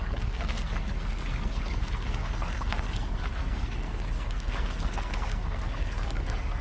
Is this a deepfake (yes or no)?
yes